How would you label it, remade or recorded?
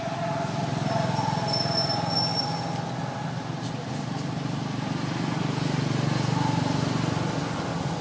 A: recorded